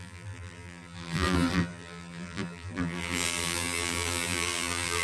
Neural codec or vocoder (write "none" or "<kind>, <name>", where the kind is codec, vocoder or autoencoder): vocoder, BigVGAN v2